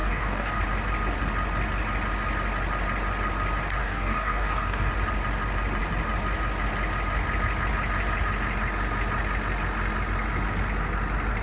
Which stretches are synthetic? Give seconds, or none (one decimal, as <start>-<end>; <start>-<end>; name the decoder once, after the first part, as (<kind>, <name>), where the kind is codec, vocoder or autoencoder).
0.0-0.6 (codec, DAC); 3.8-4.9